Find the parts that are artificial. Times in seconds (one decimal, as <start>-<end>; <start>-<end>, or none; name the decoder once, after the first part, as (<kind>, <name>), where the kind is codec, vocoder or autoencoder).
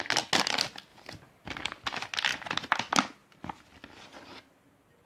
none